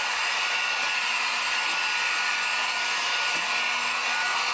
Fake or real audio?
real